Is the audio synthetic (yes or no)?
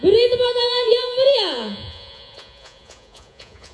yes